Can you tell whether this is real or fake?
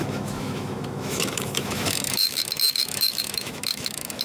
fake